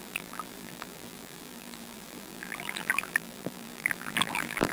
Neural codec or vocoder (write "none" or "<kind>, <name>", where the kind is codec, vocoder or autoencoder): vocoder, BigVGAN v2